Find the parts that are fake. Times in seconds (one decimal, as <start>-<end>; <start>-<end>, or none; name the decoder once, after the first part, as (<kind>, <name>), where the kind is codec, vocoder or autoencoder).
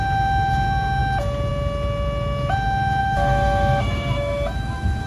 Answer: 3.0-5.1 (autoencoder, DAC-VAE)